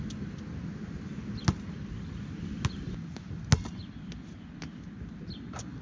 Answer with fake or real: real